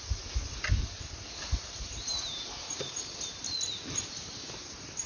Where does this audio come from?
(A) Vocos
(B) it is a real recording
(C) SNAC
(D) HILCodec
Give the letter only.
B